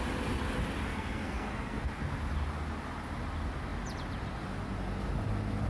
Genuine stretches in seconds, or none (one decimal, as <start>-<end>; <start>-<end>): 0.0-0.9; 1.9-5.7